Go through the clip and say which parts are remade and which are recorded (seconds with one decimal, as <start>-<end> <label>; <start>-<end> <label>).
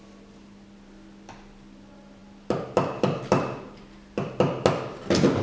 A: 0.0-5.4 recorded